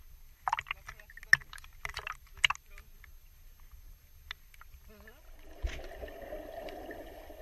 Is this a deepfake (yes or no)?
no